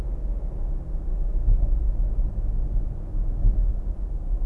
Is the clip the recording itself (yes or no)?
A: yes